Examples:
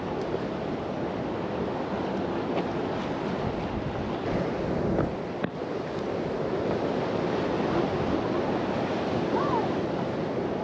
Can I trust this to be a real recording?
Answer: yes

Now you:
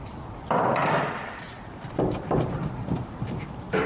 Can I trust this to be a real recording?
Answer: yes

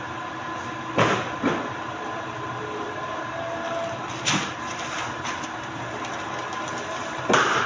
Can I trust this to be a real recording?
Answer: yes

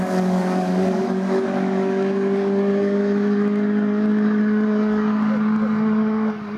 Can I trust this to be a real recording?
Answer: no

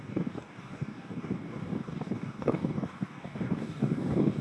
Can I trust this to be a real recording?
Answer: no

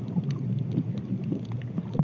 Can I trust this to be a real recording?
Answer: yes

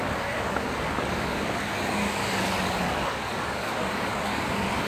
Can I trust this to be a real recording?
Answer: no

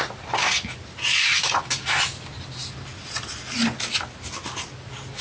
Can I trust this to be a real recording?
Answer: yes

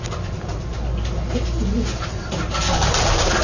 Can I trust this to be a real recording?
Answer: yes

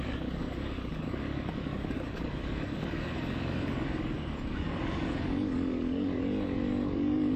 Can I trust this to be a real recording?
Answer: no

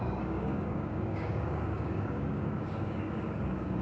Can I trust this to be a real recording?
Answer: no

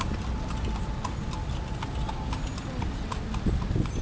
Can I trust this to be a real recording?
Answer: yes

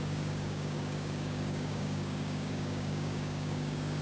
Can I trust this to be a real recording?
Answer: no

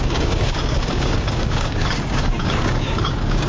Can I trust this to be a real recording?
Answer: no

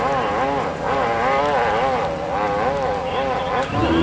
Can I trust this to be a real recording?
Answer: yes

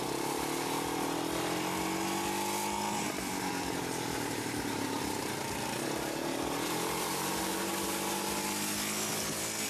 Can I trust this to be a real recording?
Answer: yes